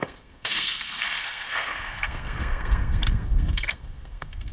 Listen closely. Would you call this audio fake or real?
fake